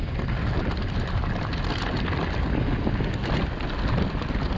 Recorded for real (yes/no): yes